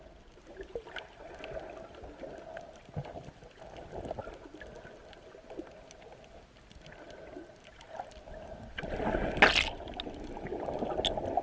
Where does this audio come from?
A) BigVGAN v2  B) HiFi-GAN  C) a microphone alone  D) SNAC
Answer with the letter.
C